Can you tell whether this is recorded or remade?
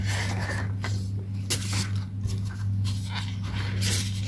recorded